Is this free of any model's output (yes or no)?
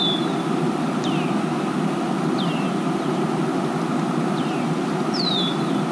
yes